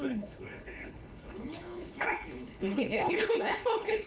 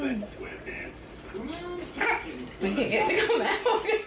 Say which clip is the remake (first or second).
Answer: first